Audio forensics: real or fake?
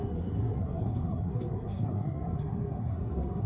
fake